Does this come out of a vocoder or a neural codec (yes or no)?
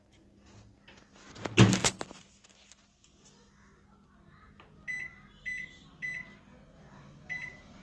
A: no